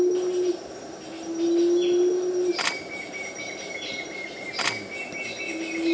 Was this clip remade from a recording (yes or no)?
no